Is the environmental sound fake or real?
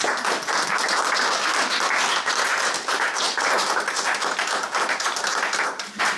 real